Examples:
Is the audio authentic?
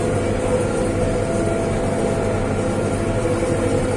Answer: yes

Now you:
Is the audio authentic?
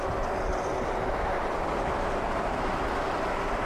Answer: yes